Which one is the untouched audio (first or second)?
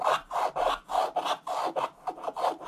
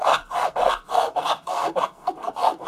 first